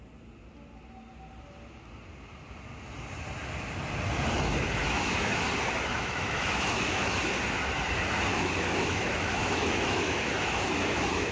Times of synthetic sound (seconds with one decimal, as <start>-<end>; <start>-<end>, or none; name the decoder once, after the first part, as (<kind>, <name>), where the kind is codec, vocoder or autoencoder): 4.8-5.5 (autoencoder, DAC-VAE); 5.9-7.2; 8.3-11.3

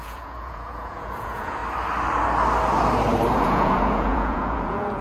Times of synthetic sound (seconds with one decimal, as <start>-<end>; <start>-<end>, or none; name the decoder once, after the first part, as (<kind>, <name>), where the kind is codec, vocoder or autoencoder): 0.0-1.6 (vocoder, Vocos); 3.4-5.0

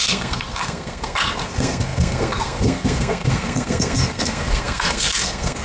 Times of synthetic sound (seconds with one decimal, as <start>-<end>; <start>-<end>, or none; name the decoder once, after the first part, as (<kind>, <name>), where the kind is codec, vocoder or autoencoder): 0.0-5.6 (codec, SNAC)

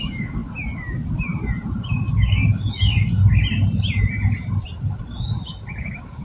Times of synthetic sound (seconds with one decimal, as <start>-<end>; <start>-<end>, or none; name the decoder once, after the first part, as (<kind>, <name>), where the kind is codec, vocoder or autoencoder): 0.0-0.4 (codec, DAC); 2.1-3.2; 5.8-6.2

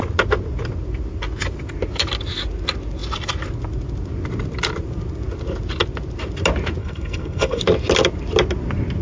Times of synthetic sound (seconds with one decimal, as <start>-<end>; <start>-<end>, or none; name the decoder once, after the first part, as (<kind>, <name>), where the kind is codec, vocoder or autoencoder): 6.8-7.6 (codec, SNAC)

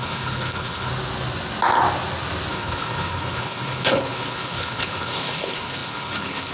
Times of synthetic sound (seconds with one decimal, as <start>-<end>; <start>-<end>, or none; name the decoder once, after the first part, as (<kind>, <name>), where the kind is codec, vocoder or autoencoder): 0.0-0.9 (codec, HILCodec); 2.5-6.5

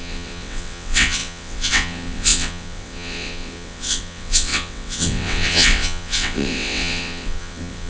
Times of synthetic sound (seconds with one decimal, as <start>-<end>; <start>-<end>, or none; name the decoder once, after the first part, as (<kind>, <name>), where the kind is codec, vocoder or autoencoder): 0.0-7.9 (vocoder, WaveNeXt)

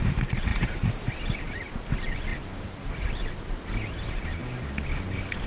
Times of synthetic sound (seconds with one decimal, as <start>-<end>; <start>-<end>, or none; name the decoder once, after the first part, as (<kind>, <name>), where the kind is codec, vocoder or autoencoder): none